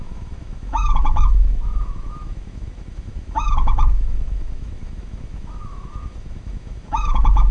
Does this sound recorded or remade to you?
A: remade